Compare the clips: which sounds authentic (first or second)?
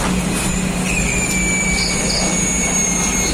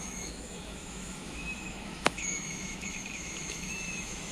first